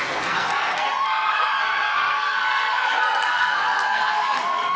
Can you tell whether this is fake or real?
fake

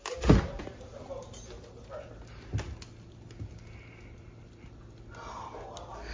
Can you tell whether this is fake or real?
real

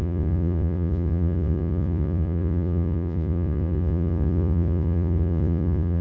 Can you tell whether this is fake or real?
fake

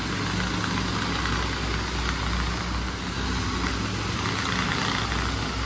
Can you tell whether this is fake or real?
real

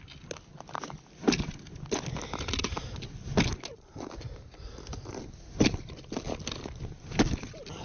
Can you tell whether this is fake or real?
real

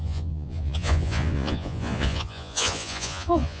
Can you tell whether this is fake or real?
fake